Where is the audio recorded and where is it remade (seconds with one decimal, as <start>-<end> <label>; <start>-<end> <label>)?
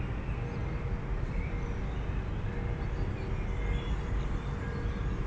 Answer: 0.0-5.3 recorded